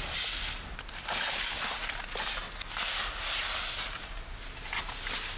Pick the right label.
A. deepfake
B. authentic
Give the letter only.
B